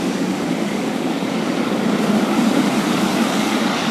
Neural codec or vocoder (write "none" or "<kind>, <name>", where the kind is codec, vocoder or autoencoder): codec, DAC